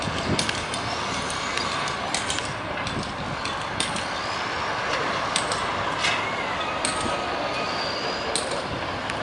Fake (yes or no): no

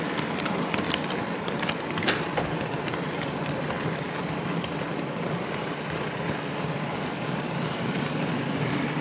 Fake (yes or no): yes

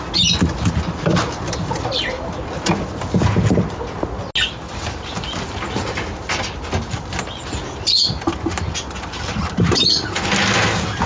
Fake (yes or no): no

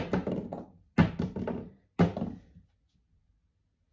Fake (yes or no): no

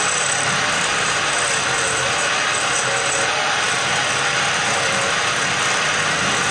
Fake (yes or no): no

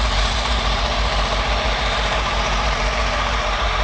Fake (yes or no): yes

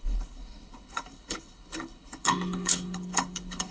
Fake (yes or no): yes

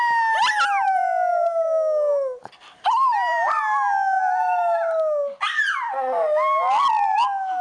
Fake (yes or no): no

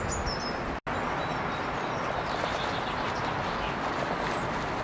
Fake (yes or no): no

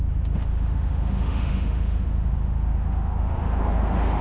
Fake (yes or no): yes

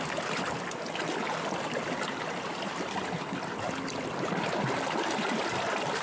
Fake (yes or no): no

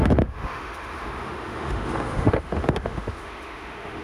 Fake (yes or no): yes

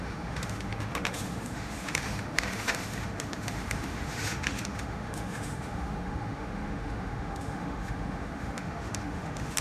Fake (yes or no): yes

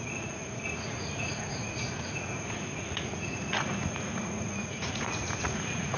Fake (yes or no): yes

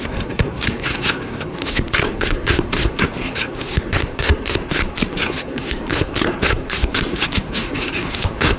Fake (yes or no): yes